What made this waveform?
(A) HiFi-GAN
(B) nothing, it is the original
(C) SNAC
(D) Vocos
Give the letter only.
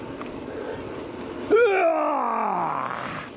B